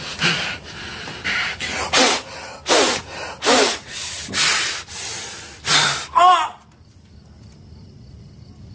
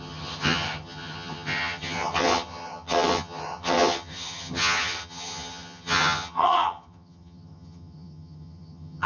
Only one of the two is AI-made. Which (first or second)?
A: second